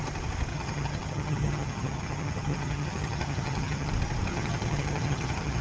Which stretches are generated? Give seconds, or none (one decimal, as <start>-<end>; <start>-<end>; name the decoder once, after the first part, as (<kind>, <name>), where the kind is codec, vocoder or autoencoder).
0.5-3.9 (vocoder, HiFi-GAN); 4.3-5.6